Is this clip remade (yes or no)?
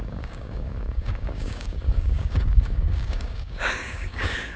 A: yes